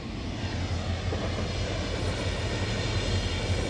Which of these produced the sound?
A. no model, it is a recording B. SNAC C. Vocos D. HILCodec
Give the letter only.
A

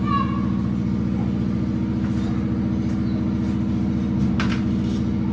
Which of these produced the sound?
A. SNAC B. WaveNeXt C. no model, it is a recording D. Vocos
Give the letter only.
C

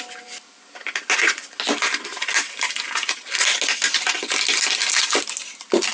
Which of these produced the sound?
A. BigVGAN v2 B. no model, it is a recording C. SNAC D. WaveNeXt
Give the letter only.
B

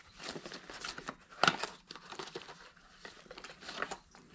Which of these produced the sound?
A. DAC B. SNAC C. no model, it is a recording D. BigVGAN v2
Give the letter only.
C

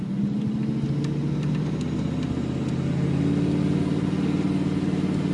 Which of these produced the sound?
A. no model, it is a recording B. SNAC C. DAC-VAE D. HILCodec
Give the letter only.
A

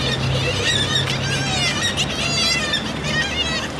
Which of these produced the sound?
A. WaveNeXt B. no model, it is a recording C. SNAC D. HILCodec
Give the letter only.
B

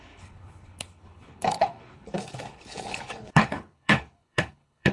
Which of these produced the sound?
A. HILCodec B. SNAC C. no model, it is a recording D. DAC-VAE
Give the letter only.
A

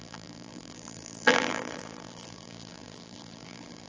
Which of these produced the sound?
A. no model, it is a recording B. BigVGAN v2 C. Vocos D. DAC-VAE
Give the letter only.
B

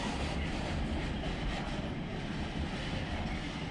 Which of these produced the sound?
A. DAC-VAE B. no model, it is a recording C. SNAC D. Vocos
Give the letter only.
B